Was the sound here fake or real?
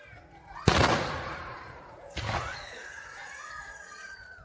fake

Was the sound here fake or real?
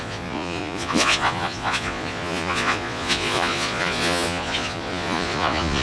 fake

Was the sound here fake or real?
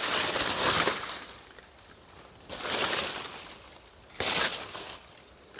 real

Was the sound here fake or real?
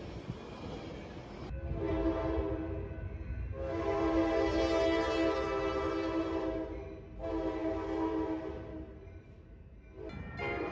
real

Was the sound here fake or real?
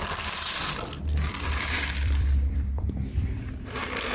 fake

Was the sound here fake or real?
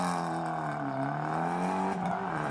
real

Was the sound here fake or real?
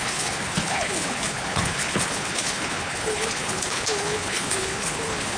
fake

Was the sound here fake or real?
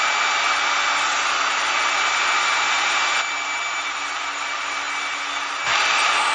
real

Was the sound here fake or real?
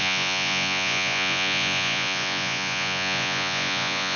fake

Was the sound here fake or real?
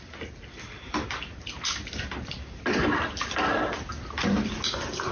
real